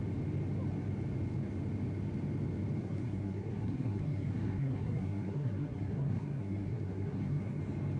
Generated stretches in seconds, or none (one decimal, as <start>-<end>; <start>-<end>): 2.8-7.6